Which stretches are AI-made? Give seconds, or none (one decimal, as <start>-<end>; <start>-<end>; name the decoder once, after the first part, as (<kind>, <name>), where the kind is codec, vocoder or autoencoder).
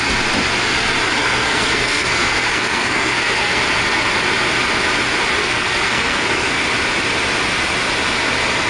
1.2-3.6 (codec, SNAC); 5.4-6.6